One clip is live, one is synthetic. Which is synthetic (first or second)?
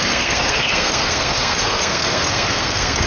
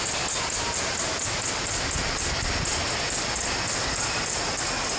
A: first